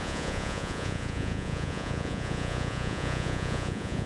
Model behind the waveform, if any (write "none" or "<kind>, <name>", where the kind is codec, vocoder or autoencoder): vocoder, Vocos